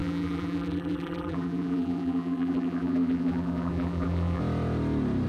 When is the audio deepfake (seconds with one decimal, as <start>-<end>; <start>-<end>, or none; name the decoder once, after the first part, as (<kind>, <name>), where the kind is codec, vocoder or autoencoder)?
0.0-4.4 (vocoder, BigVGAN v2)